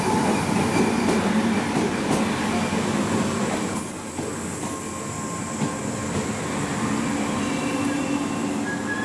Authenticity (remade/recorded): recorded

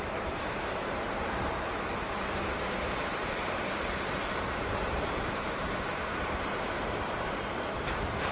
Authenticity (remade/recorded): remade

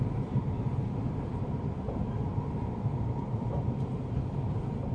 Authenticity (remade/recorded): remade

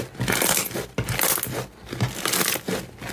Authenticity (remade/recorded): recorded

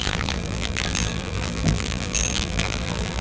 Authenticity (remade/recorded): remade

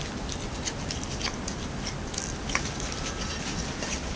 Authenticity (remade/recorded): recorded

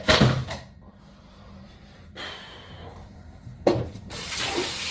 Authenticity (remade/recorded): remade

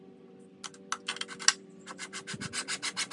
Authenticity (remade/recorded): recorded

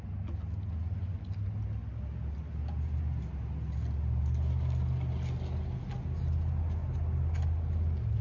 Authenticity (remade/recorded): recorded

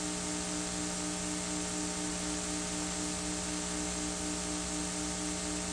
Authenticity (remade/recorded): recorded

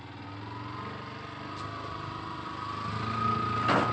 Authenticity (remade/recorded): recorded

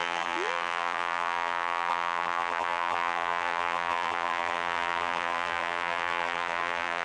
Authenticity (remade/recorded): remade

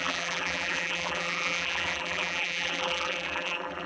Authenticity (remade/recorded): remade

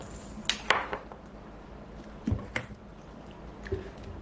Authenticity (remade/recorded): remade